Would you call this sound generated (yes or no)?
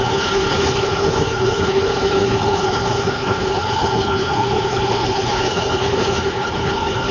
yes